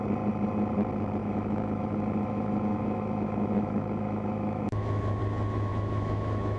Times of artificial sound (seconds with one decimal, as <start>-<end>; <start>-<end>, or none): 1.2-5.2; 5.7-6.6

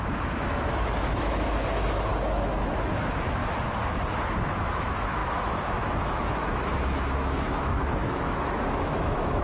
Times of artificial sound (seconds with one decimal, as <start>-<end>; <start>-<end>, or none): 0.0-3.4; 4.4-9.4

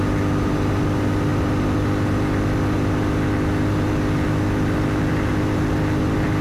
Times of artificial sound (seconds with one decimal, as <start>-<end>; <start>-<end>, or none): none